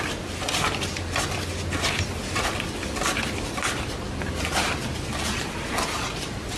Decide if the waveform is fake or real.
real